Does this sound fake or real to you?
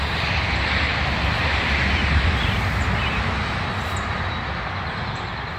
real